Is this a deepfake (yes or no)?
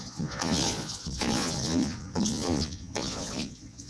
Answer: yes